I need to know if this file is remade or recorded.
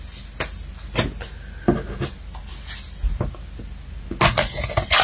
recorded